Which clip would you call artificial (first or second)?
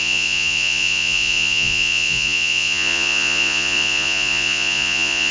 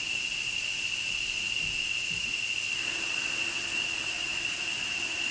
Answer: first